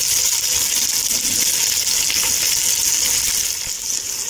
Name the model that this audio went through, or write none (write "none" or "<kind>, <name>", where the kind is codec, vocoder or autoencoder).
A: none